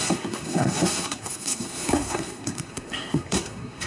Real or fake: fake